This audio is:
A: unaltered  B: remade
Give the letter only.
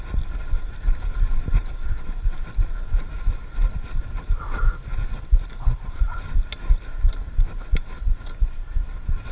B